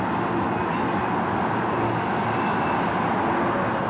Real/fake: real